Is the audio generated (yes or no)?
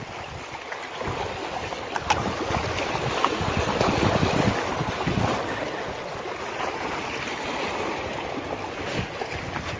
no